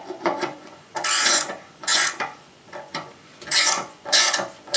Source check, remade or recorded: remade